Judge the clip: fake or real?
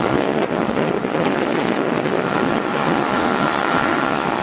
fake